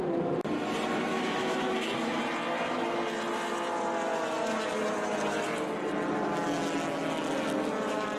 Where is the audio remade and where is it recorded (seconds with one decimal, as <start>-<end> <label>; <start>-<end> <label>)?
0.0-1.1 recorded; 1.1-2.2 remade; 2.2-8.2 recorded